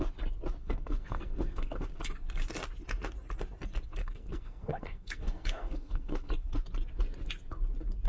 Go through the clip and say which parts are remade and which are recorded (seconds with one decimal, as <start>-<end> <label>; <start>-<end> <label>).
0.0-0.6 recorded; 0.6-1.9 remade; 1.9-4.0 recorded; 4.0-6.3 remade; 6.3-8.1 recorded